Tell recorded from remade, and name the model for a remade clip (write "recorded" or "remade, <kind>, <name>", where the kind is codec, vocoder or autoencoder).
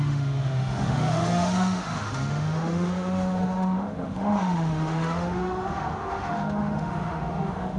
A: remade, autoencoder, DAC-VAE